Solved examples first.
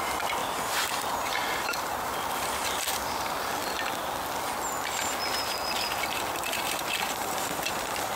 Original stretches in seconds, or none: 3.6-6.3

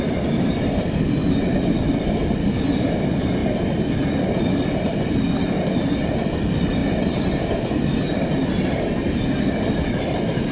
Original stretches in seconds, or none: 3.4-4.0

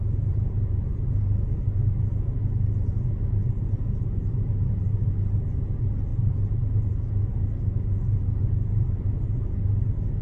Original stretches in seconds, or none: 0.0-6.1; 7.1-10.2

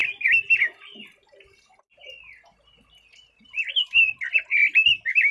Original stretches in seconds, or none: 0.0-5.3

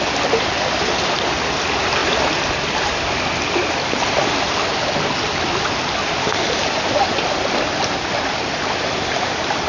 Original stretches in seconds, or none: 0.0-9.7

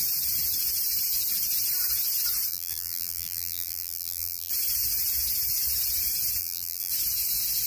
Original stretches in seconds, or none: 0.0-2.5; 4.5-6.4; 6.9-7.7

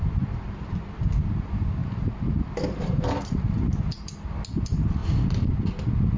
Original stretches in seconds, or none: 0.0-1.8; 3.4-6.2

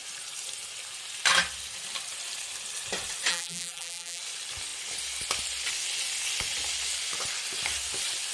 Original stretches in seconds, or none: 0.0-3.3; 4.2-8.3